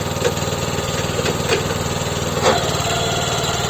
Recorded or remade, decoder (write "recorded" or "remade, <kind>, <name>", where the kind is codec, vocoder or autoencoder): recorded